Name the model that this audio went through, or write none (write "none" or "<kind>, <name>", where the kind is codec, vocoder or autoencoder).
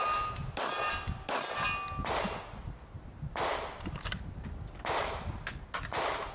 none